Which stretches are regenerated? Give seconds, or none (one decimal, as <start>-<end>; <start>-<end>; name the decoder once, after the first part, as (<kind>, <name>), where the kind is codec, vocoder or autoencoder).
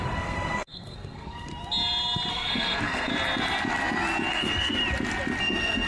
0.0-1.5 (codec, SNAC); 2.3-3.1; 4.3-4.8; 5.4-5.9